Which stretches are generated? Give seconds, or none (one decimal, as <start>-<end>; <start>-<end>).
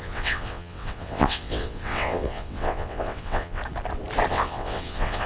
0.0-3.6; 4.3-5.3